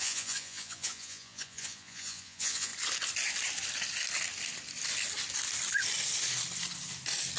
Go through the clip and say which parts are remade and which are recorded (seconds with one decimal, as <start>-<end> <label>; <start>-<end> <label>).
0.0-2.7 remade; 2.7-7.4 recorded